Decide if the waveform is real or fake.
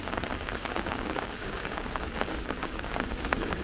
fake